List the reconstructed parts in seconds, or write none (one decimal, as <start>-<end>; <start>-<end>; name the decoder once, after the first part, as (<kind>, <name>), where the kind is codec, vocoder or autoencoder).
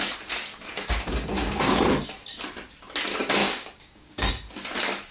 1.1-1.8 (codec, DAC); 3.4-4.3